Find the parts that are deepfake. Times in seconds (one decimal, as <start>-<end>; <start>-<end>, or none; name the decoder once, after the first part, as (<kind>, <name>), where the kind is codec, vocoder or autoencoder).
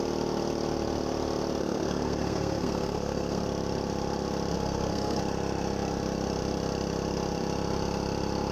1.6-3.4 (codec, SNAC); 4.5-5.2